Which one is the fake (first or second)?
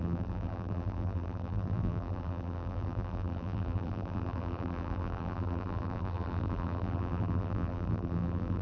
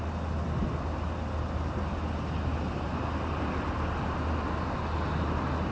first